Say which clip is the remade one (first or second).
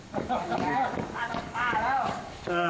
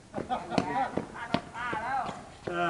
first